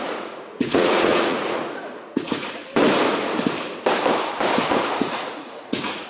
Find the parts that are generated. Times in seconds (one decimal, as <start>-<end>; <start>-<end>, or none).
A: 0.0-2.6; 4.8-6.1